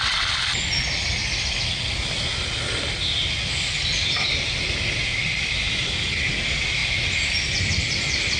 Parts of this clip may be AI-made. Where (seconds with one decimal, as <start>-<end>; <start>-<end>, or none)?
none